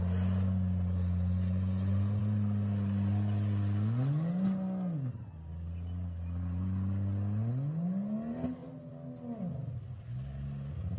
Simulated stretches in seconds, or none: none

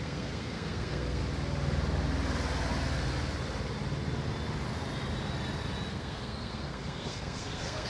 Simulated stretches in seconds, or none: 0.0-1.2 (codec, SNAC); 5.9-7.9

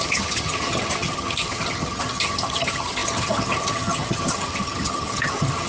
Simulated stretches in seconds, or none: 0.0-5.7 (vocoder, HiFi-GAN)